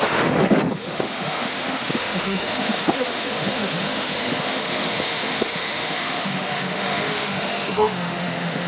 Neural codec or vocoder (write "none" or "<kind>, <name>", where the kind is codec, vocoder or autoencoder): autoencoder, DAC-VAE